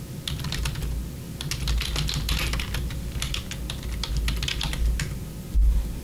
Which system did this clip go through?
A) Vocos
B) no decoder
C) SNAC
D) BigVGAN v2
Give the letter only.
B